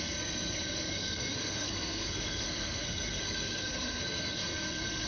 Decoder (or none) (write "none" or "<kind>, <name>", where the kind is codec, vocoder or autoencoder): codec, SNAC